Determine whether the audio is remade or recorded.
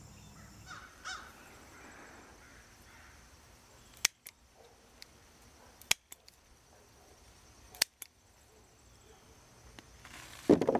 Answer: recorded